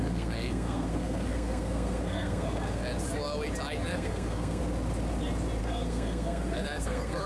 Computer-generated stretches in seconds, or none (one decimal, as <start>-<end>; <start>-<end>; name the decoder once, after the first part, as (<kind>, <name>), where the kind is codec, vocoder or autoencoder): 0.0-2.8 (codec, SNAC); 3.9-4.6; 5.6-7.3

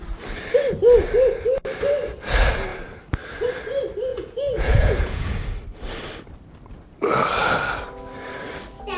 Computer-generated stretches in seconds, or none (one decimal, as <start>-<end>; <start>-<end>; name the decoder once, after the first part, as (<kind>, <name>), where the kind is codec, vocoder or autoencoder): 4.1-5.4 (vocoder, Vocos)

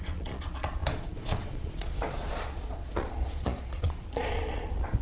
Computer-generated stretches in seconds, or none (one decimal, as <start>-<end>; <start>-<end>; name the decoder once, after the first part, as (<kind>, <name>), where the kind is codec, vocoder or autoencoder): 0.0-5.0 (vocoder, Vocos)